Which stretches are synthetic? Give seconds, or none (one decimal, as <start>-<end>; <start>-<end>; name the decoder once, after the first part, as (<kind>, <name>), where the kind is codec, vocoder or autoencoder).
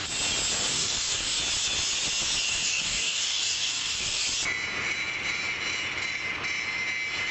0.7-1.4 (codec, DAC); 2.5-4.2